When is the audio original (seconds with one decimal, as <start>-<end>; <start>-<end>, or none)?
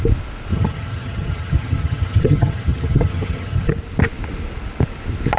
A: 0.0-0.5; 3.7-5.4